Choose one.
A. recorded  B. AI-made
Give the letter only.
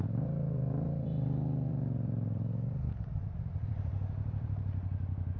B